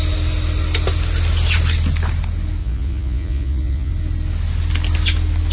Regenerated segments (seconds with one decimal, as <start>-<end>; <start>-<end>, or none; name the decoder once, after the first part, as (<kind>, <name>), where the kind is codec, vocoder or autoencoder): 2.6-3.9 (vocoder, Vocos)